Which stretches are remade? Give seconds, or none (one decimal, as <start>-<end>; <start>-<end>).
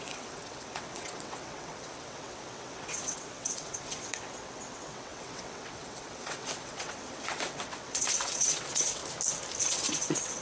0.0-9.0; 9.6-10.4